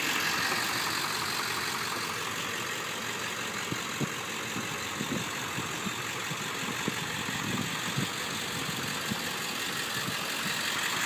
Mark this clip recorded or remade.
recorded